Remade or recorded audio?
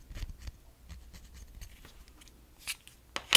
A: recorded